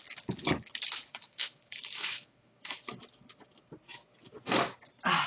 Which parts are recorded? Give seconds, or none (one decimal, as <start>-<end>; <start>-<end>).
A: 0.0-1.1; 2.8-5.3